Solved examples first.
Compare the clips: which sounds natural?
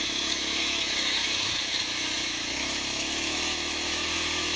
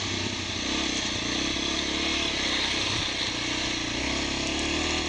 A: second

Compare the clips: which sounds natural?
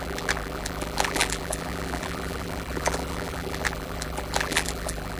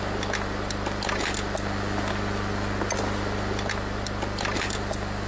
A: second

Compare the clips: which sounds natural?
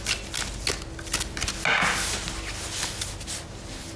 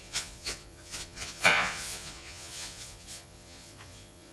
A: first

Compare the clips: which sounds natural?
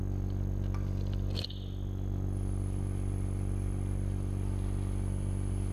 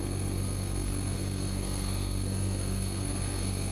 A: first